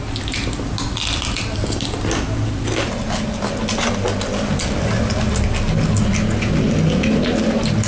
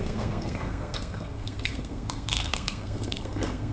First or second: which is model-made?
second